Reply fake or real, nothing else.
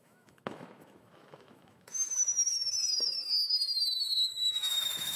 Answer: fake